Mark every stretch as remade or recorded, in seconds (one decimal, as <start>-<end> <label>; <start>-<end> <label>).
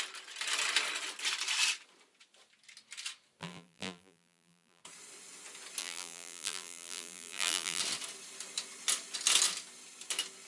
0.0-3.4 recorded; 3.4-4.8 remade; 4.8-5.8 recorded; 5.8-7.8 remade; 7.8-10.5 recorded